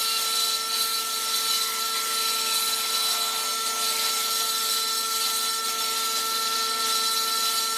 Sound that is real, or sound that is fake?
real